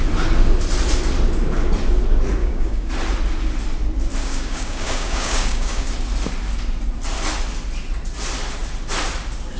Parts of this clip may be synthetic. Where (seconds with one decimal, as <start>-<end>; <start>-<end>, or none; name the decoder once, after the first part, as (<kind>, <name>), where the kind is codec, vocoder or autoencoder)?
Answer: 2.4-2.9 (codec, DAC); 4.2-5.9